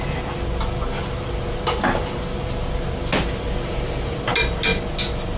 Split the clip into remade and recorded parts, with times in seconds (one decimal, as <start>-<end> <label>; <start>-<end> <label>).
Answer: 0.0-5.4 recorded